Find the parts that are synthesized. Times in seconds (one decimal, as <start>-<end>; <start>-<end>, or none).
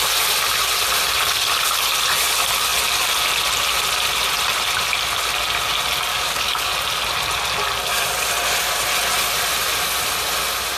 6.1-6.7